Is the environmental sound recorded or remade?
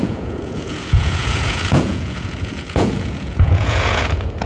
remade